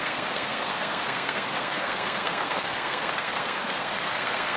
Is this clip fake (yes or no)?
yes